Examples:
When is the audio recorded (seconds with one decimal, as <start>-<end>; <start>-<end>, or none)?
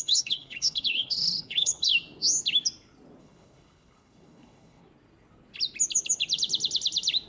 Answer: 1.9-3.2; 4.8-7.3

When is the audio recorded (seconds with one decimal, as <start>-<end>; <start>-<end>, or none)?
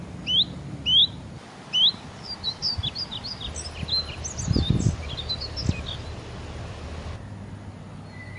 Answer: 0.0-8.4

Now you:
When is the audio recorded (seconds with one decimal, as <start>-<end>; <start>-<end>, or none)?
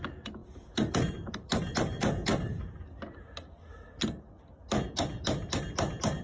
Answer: 2.3-6.2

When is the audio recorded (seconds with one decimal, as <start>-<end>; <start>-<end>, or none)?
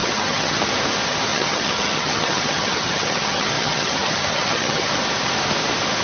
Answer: 0.6-1.3; 4.9-6.0